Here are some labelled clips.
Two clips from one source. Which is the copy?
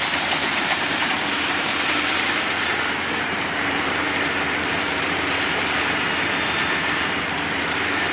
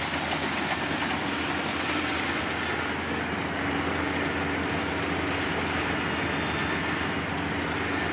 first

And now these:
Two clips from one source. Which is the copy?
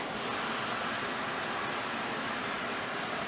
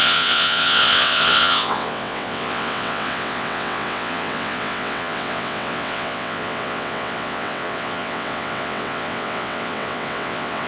second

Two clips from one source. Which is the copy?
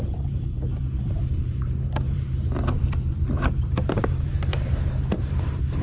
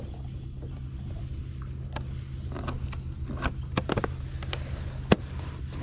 first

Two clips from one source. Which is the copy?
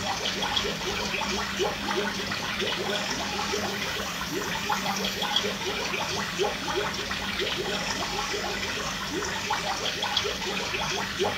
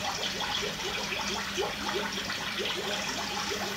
first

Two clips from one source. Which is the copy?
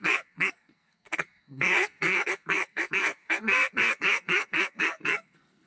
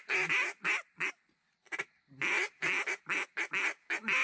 first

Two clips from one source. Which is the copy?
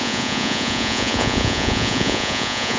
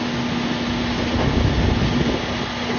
first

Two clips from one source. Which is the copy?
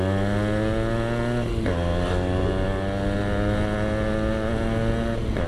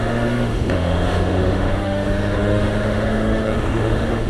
second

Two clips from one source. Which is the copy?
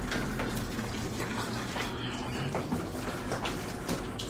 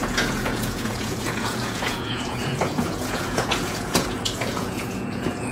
second